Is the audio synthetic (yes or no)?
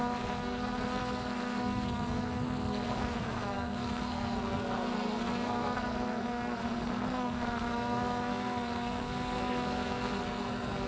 yes